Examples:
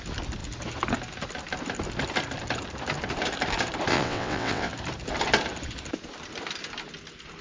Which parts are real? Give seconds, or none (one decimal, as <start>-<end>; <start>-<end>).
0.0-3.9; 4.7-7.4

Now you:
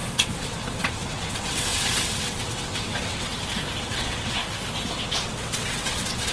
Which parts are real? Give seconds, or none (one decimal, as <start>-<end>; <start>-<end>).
3.3-3.8; 4.4-4.9

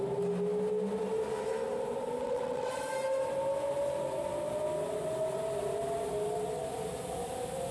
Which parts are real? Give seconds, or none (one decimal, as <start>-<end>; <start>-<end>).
0.0-2.2; 2.7-7.7